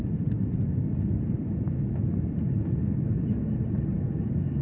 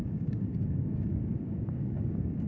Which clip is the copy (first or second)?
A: second